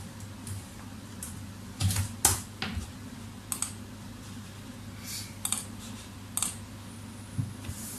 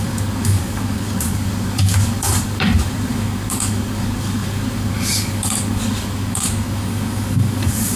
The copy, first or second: second